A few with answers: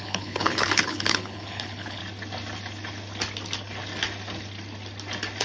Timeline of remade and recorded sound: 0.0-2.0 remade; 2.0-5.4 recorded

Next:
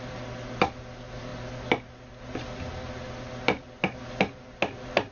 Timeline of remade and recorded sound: 0.0-5.1 recorded